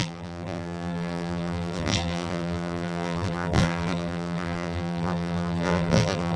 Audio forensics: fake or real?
fake